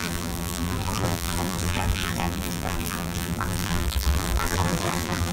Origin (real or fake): fake